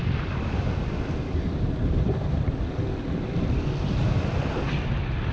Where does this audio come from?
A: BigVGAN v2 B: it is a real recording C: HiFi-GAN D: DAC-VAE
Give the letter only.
B